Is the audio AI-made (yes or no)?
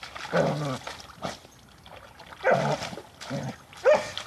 no